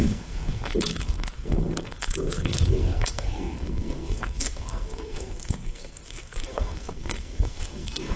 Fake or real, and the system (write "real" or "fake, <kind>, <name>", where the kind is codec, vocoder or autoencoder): fake, codec, SNAC